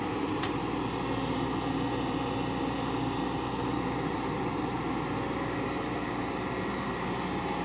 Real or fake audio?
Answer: real